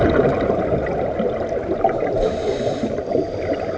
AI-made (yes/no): no